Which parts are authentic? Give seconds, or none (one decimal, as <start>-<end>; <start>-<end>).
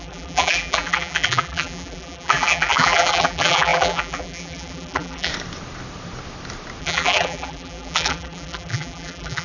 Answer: 5.3-6.8